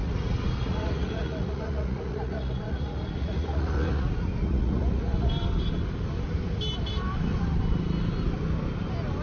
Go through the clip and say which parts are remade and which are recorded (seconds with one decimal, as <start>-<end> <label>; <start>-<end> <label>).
0.0-5.3 remade; 5.3-9.2 recorded